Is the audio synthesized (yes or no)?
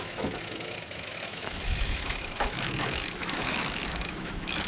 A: yes